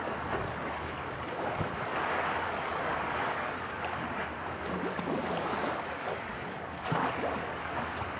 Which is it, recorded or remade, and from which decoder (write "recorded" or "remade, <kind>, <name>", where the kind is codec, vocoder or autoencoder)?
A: remade, codec, DAC